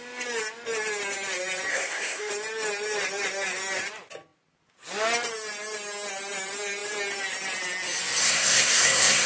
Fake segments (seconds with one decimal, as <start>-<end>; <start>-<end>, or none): 1.7-2.3; 8.2-9.3